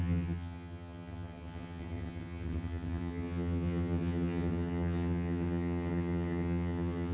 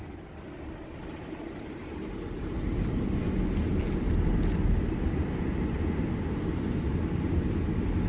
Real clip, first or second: second